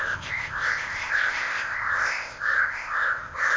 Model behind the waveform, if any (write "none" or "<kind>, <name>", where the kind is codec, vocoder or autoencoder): codec, ZipCodec